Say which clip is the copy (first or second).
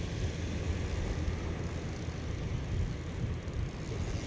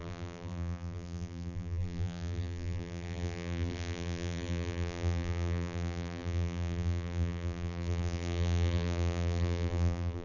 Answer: second